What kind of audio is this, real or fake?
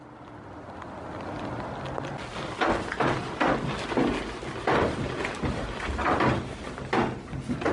real